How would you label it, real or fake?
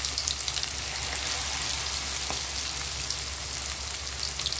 real